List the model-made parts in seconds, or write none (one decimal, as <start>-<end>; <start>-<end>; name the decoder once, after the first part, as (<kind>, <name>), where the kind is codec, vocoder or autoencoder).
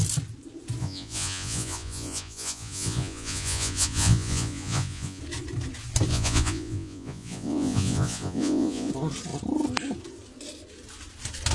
0.8-5.2 (vocoder, Vocos); 6.1-8.9